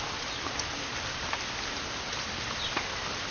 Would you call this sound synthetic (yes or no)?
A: no